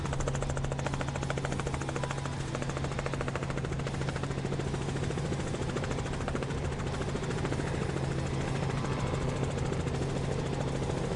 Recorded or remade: recorded